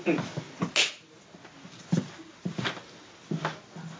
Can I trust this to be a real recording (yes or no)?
yes